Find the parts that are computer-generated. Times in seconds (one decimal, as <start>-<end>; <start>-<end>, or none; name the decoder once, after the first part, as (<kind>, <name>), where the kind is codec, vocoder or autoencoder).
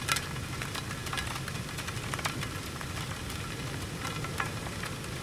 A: none